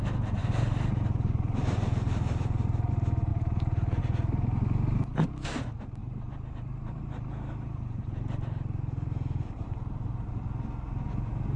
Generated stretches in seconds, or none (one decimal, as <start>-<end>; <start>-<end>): 0.4-2.9; 3.3-4.0; 6.0-10.3